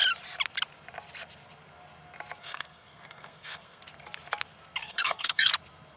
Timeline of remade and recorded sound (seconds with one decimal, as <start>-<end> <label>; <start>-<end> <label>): 0.0-2.4 recorded; 2.4-3.8 remade; 3.8-4.8 recorded; 4.8-5.5 remade; 5.5-6.0 recorded